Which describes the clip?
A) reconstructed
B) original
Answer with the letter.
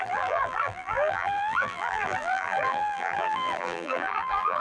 A